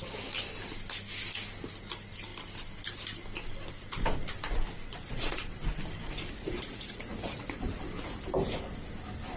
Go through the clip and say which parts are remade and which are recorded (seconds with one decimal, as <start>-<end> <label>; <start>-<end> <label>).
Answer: 0.0-4.9 recorded; 4.9-5.6 remade; 5.6-6.4 recorded; 6.4-7.6 remade; 7.6-9.4 recorded